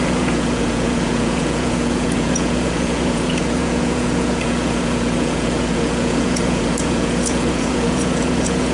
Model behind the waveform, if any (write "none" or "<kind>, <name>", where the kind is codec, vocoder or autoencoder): vocoder, Vocos